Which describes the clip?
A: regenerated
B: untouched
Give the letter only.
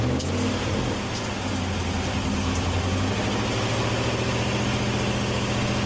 B